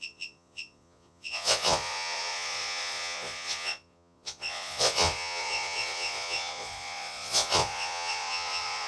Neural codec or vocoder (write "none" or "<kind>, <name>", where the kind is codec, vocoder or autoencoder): vocoder, Vocos